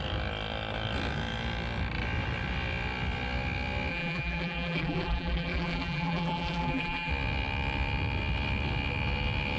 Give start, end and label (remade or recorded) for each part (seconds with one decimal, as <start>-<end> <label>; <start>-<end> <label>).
0.0-3.9 recorded; 3.9-7.1 remade; 7.1-9.6 recorded